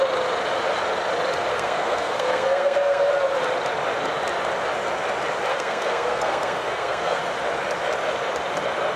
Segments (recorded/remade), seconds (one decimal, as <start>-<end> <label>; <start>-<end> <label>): 0.0-1.5 recorded; 1.5-3.1 remade; 3.1-5.5 recorded; 5.5-7.2 remade; 7.2-9.0 recorded